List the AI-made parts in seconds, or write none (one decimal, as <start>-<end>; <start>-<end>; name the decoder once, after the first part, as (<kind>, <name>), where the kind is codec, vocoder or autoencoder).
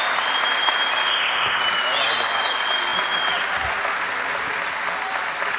1.1-1.6 (codec, ZipCodec)